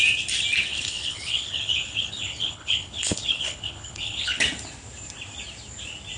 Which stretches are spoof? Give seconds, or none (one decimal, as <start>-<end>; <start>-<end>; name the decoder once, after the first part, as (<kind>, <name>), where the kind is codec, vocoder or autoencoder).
0.7-4.4 (codec, HILCodec)